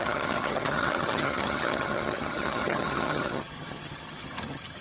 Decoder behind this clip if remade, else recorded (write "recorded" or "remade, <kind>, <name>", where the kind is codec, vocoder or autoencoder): remade, vocoder, HiFi-GAN